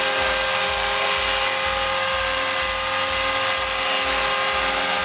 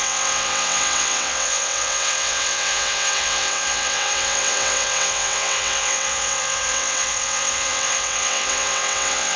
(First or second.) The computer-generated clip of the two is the second